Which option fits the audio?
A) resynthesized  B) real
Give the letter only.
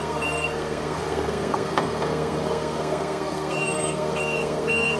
A